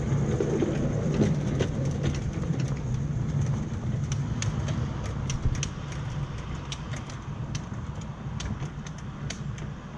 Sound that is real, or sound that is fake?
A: real